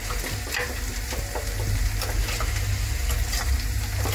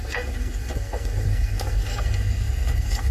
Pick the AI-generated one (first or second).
second